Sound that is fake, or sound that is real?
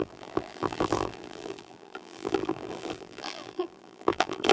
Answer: fake